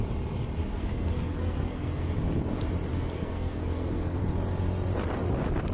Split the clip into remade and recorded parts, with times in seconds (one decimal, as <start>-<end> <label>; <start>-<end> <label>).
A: 0.0-0.6 recorded; 0.6-2.1 remade; 2.1-2.9 recorded; 2.9-4.2 remade; 4.2-5.7 recorded